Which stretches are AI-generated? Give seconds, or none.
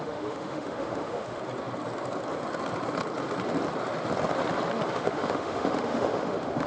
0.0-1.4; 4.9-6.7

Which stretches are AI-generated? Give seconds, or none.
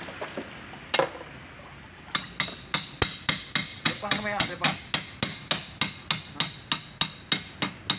3.7-4.5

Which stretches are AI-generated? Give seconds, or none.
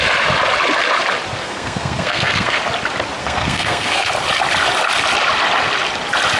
1.4-2.6; 3.2-4.1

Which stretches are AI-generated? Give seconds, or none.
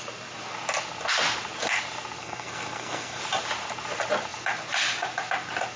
2.2-3.2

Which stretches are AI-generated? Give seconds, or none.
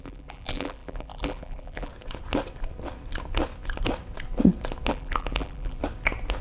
0.0-1.9; 4.9-5.8